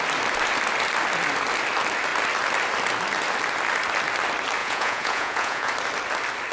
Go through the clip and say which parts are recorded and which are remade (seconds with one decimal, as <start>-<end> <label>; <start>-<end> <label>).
0.0-4.6 recorded; 4.6-5.7 remade; 5.7-6.5 recorded